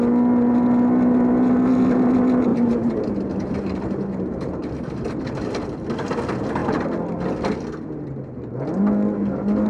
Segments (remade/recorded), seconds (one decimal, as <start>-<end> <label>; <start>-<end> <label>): 0.0-2.5 recorded; 2.5-5.1 remade; 5.1-9.7 recorded